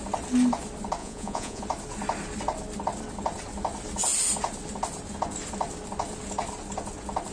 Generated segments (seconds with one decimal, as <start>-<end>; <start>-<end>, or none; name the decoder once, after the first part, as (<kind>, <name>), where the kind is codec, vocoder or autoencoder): 1.0-1.6 (vocoder, Vocos)